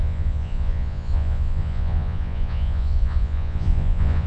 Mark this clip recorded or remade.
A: remade